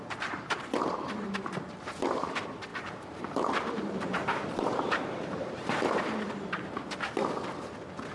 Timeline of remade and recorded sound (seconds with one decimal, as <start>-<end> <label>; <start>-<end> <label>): 0.0-2.7 recorded; 2.7-6.0 remade; 6.0-8.1 recorded